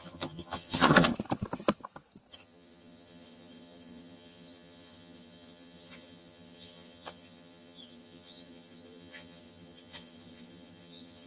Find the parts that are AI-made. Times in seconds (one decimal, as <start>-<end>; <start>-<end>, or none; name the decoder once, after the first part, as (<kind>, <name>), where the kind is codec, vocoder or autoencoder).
0.0-1.1 (vocoder, HiFi-GAN); 2.3-11.3